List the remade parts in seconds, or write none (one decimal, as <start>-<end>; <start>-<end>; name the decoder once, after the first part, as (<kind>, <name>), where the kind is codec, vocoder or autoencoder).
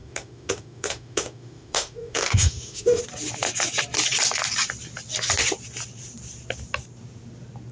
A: 0.0-3.0 (autoencoder, DAC-VAE)